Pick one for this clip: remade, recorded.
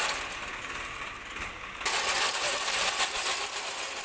recorded